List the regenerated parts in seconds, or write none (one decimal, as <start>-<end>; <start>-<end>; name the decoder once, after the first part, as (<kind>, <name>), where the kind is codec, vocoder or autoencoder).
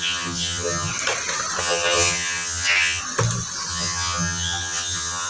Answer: 0.0-0.9 (vocoder, HiFi-GAN); 1.6-3.0; 3.7-5.3